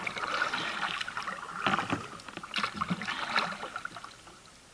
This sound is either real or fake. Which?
real